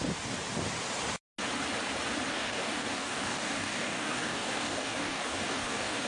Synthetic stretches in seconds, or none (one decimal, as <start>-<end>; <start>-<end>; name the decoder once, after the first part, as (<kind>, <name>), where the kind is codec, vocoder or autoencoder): 2.3-6.1 (codec, DAC)